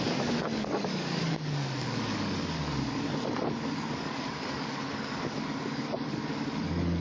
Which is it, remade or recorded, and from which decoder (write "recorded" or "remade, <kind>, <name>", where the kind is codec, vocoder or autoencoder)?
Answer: remade, codec, DAC